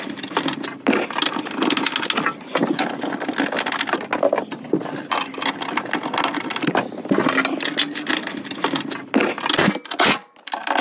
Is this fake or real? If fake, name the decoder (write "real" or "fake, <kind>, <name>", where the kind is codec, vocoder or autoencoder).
real